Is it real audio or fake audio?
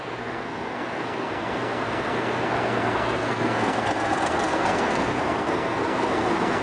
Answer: fake